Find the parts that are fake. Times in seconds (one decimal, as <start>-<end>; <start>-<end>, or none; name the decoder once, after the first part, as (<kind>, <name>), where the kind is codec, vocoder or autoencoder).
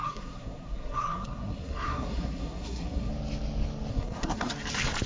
0.0-3.1 (codec, SNAC); 3.9-4.5